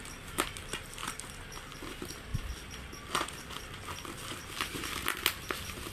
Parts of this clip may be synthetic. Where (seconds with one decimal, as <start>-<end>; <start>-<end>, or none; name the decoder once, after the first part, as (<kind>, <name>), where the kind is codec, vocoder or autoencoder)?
none